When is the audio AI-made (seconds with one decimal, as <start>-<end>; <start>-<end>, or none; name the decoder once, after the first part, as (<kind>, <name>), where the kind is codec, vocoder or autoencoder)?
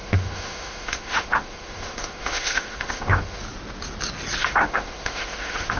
0.0-3.4 (autoencoder, DAC-VAE); 4.4-5.8